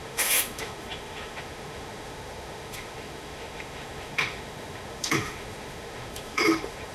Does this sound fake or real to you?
fake